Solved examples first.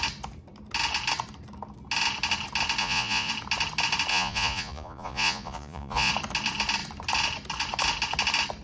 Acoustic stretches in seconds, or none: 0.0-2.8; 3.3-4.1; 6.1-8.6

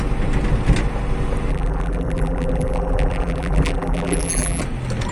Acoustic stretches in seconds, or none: 0.0-1.5; 4.6-5.1

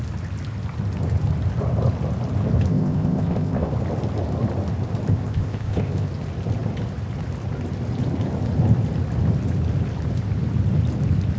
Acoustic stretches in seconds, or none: 0.0-2.7; 3.7-5.1; 6.1-11.4

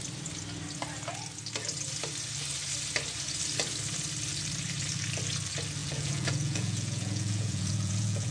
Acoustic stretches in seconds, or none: 0.0-5.8

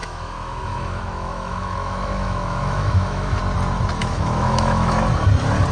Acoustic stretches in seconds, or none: 3.4-4.0; 5.0-5.7

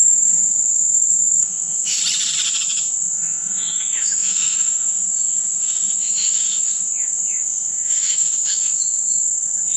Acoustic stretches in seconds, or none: 2.0-2.8

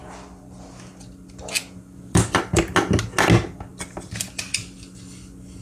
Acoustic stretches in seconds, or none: 2.6-3.7; 5.0-5.6